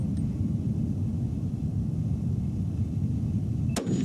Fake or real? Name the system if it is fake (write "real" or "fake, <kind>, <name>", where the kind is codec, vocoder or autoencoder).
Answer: real